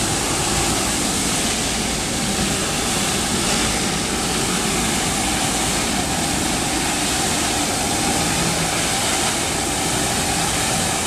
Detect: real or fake real